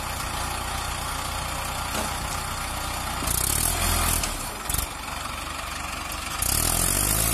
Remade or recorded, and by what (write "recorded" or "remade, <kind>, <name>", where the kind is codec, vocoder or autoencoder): recorded